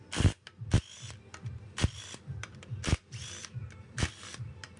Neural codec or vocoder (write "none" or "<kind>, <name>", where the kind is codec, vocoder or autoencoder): vocoder, BigVGAN v2